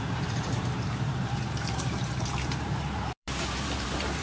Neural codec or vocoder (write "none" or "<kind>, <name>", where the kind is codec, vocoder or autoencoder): vocoder, BigVGAN v2